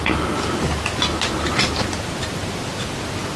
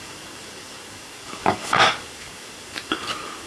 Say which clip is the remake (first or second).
second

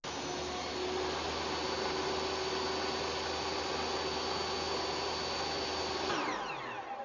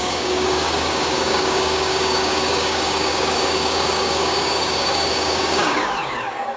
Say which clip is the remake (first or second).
second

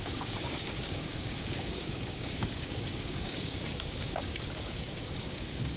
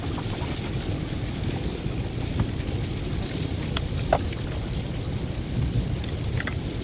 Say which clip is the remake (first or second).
first